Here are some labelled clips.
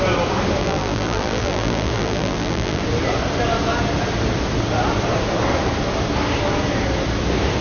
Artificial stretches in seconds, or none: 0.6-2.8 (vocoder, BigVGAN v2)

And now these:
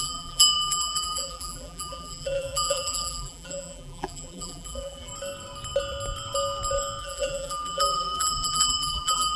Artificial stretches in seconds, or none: 0.0-5.1 (vocoder, BigVGAN v2); 7.0-9.4

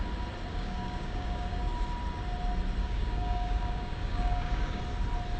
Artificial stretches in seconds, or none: 0.5-1.7 (codec, DAC); 2.8-4.8

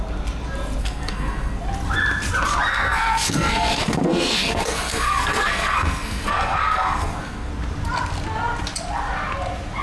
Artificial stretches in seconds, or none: 0.8-1.6 (codec, SNAC); 2.7-7.5

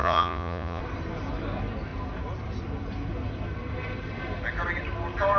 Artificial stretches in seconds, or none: 0.0-0.8 (vocoder, Vocos)

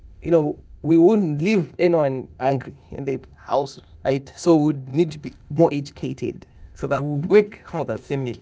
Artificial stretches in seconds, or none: 0.0-8.4 (codec, ZipCodec)

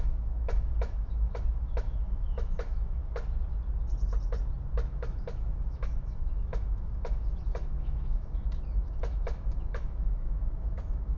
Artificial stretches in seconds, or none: 0.0-3.0 (autoencoder, DAC-VAE); 4.9-11.2